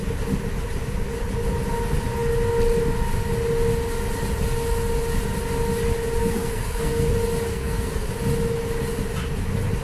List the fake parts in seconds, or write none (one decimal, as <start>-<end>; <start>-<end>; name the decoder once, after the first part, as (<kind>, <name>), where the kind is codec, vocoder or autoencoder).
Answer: 6.2-7.1 (codec, SNAC); 7.5-8.1